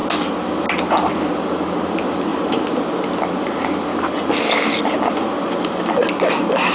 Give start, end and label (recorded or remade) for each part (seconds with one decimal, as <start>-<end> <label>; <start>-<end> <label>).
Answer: 0.0-6.7 recorded